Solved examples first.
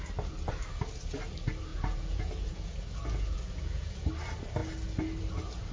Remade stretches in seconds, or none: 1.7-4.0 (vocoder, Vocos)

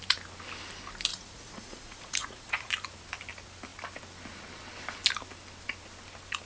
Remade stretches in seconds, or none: 1.1-2.7 (vocoder, Vocos)

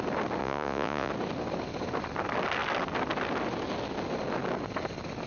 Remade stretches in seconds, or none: 0.4-1.1 (vocoder, Vocos)

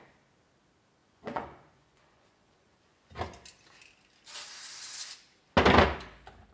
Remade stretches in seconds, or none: 1.0-3.1 (vocoder, Vocos)

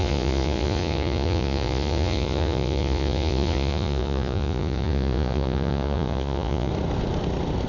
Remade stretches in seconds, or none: 0.0-6.7 (vocoder, Vocos)